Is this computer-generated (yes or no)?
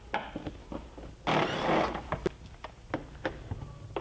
no